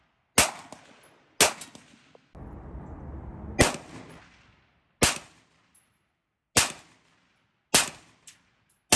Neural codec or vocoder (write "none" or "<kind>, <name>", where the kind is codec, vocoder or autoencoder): none